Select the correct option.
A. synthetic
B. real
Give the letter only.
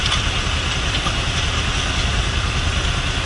B